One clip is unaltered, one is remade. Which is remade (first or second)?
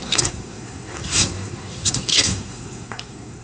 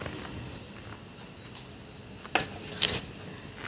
first